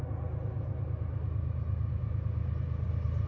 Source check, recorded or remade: recorded